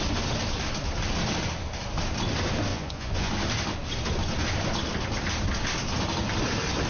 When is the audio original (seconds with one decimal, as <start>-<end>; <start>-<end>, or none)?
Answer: 0.0-2.7; 3.3-6.9